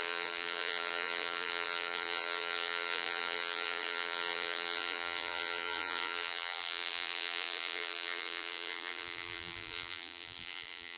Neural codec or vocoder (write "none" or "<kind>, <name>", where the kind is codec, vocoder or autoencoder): vocoder, BigVGAN v2